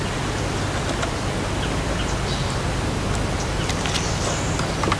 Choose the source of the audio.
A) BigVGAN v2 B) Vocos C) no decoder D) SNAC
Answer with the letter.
C